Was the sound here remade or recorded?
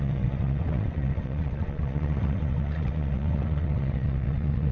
remade